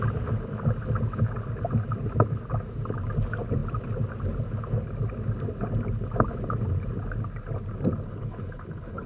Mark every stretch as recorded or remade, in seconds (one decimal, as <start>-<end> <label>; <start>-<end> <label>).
0.0-8.1 recorded; 8.1-9.1 remade